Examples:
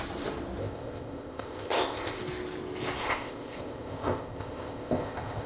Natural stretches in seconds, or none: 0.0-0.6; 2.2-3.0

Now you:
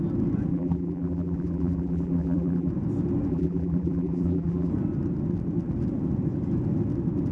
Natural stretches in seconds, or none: 0.0-0.5; 2.7-3.3; 4.7-7.3

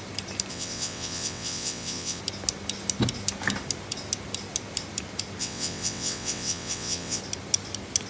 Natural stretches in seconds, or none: 0.0-0.5; 2.2-5.4; 7.2-8.1

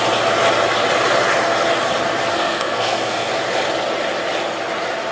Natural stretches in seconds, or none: 0.0-2.3; 3.3-5.1